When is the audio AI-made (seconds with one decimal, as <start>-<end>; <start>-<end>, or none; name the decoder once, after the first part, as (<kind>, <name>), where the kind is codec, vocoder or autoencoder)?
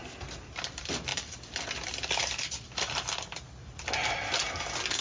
none